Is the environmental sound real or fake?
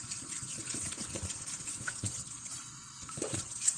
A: fake